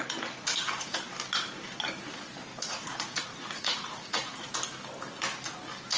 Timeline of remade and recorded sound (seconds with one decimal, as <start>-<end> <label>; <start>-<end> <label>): 0.0-2.5 recorded; 2.5-4.5 remade; 4.5-6.0 recorded